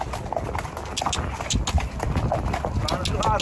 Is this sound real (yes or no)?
yes